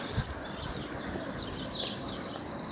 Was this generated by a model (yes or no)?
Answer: no